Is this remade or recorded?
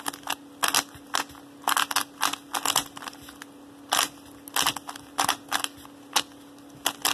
recorded